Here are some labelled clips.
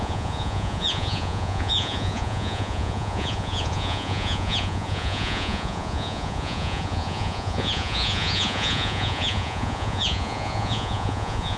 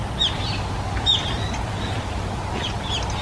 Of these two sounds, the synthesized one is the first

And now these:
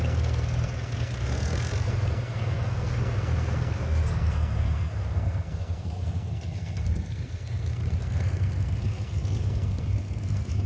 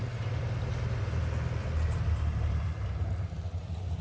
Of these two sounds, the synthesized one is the first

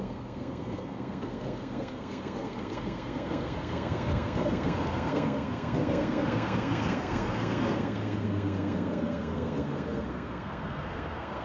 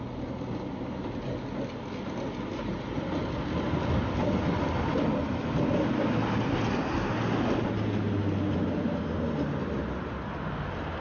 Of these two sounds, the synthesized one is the first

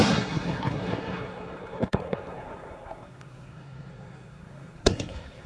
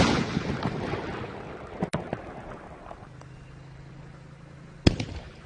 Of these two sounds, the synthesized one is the first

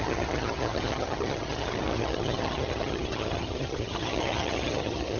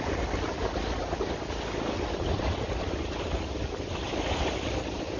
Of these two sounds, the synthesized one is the first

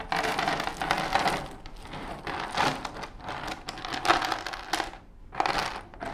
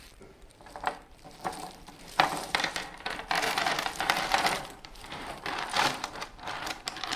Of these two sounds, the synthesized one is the second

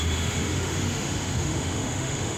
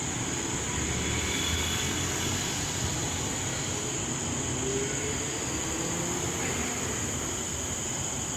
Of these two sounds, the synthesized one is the first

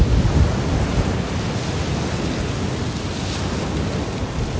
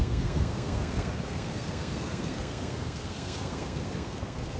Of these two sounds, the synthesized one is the second